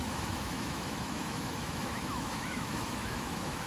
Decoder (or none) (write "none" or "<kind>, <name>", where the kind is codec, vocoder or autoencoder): autoencoder, DAC-VAE